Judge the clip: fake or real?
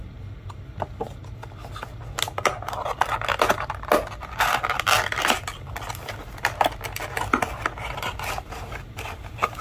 real